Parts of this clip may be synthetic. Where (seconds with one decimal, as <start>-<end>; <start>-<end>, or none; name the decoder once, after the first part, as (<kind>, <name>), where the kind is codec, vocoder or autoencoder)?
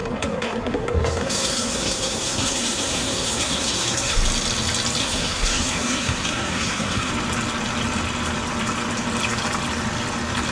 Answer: 0.0-4.2 (codec, SNAC); 5.0-7.1